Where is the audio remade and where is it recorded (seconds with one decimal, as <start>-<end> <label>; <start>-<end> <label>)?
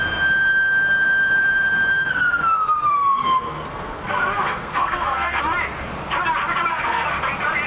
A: 0.0-1.9 recorded; 1.9-5.4 remade; 5.4-6.7 recorded; 6.7-7.2 remade; 7.2-7.7 recorded